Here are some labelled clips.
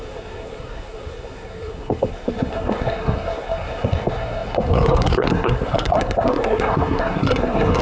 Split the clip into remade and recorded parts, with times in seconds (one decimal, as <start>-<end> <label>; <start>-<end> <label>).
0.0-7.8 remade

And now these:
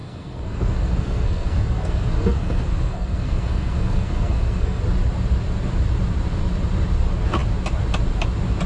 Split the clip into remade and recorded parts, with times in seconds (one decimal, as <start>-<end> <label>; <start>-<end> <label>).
0.0-4.8 remade; 4.8-8.7 recorded

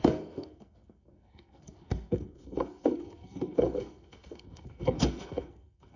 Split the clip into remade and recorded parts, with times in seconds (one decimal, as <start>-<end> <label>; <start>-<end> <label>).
0.0-6.0 remade

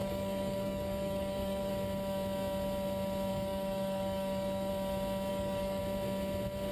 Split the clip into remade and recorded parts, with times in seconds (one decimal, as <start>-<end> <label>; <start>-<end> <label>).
0.0-1.7 remade; 1.7-3.3 recorded; 3.3-4.7 remade; 4.7-5.3 recorded; 5.3-5.8 remade; 5.8-6.7 recorded

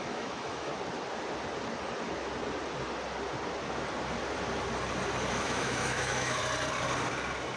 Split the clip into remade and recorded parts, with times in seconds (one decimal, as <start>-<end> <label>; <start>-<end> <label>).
0.0-0.7 remade; 0.7-5.3 recorded; 5.3-6.4 remade; 6.4-7.6 recorded

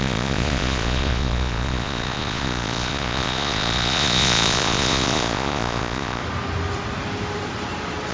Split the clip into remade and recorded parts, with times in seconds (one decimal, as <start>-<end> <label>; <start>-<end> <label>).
0.0-6.2 remade; 6.2-8.1 recorded

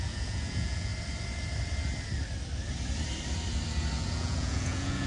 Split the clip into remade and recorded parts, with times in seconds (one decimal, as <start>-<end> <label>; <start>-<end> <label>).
0.0-0.9 remade; 0.9-4.0 recorded; 4.0-5.1 remade

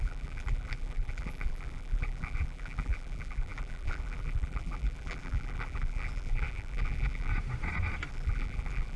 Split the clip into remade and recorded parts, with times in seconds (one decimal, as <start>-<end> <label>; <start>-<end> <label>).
0.0-7.3 remade; 7.3-8.1 recorded; 8.1-9.0 remade